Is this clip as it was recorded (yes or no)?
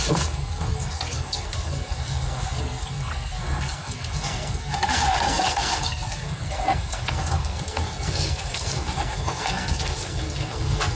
no